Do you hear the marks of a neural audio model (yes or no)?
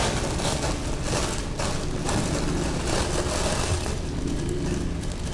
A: no